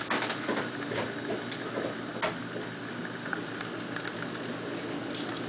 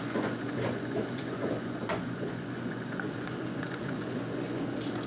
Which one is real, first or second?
first